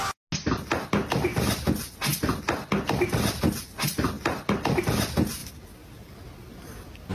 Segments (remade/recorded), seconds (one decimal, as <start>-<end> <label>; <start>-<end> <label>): 0.0-7.1 recorded